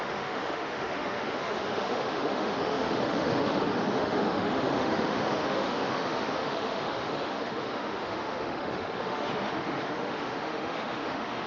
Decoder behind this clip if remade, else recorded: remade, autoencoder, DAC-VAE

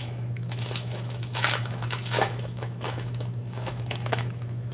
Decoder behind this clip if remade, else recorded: remade, autoencoder, DAC-VAE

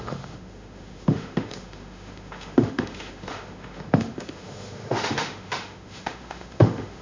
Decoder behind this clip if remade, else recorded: remade, autoencoder, DAC-VAE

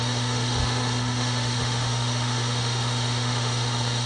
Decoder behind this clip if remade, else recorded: remade, autoencoder, DAC-VAE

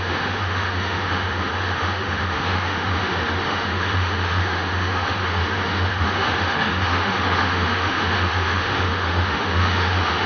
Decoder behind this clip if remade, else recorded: remade, autoencoder, DAC-VAE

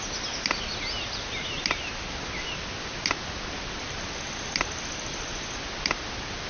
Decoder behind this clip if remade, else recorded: recorded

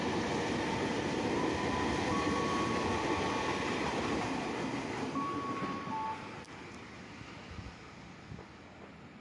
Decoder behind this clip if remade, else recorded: recorded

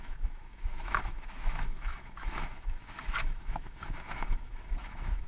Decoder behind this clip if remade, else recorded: remade, autoencoder, DAC-VAE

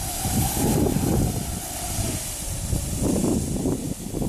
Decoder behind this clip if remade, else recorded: recorded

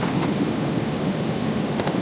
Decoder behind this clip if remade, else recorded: remade, autoencoder, DAC-VAE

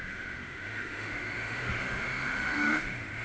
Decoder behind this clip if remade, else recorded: remade, autoencoder, DAC-VAE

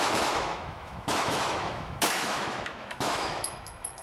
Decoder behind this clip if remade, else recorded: remade, autoencoder, DAC-VAE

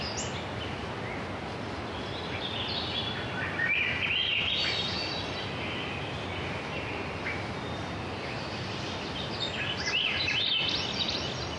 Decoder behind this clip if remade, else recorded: recorded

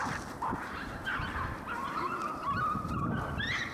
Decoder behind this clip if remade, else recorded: recorded